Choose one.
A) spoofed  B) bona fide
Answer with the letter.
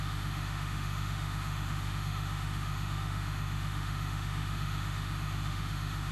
A